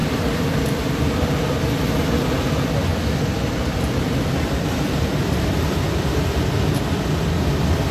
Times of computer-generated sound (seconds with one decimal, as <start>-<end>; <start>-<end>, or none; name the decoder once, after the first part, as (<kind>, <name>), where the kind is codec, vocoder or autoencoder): 0.0-1.4 (vocoder, BigVGAN v2); 2.9-7.3